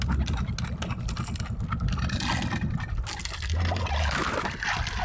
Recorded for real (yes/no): yes